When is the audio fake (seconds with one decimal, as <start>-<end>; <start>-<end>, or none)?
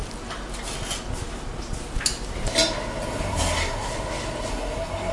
3.1-3.9; 4.5-5.1